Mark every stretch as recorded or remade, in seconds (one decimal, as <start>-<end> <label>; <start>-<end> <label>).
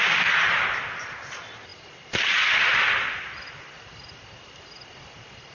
0.0-5.5 recorded